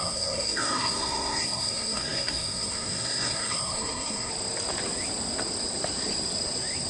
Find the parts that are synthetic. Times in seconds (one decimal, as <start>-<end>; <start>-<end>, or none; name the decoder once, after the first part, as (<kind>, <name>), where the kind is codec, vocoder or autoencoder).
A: 0.0-4.3 (codec, SNAC)